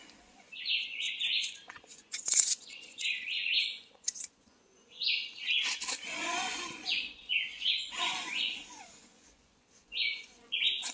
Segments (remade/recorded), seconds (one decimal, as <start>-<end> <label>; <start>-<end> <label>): 0.0-5.2 remade; 5.2-6.0 recorded; 6.0-10.9 remade